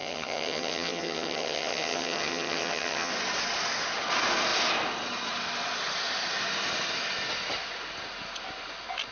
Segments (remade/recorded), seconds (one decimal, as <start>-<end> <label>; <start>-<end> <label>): 0.0-3.1 remade; 3.1-9.1 recorded